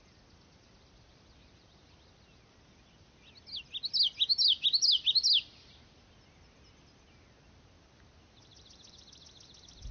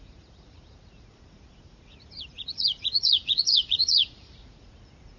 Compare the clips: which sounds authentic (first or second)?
first